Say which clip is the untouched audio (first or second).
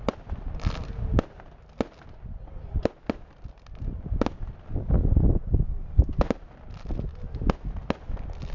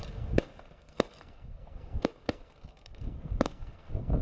first